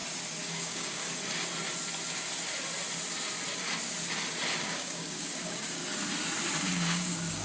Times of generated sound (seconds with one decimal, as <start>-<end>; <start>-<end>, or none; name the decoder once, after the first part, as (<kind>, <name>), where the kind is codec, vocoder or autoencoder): 0.5-1.0 (codec, DAC); 4.6-5.8; 6.6-7.4